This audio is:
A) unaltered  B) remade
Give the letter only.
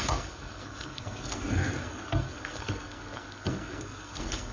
B